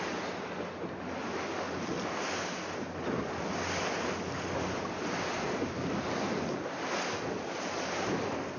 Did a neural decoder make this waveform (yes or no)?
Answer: no